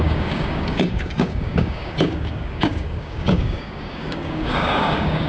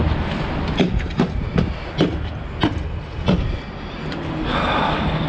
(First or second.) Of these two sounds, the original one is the second